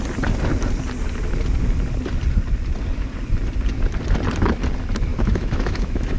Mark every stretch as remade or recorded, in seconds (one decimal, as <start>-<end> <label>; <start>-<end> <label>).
0.0-5.1 recorded; 5.1-6.2 remade